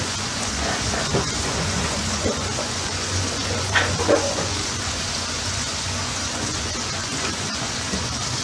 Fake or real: fake